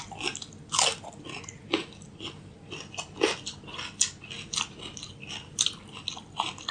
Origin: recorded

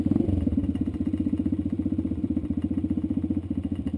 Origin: remade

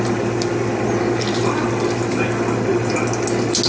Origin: recorded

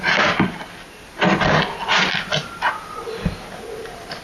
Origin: recorded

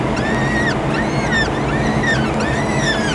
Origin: recorded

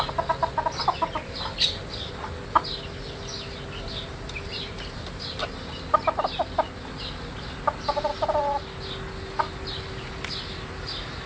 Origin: recorded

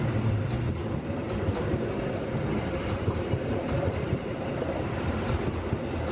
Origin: remade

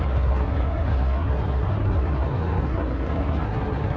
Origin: remade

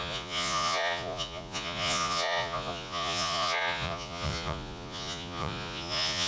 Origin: remade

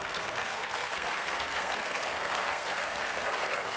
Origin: remade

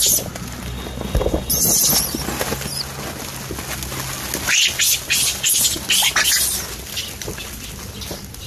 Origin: recorded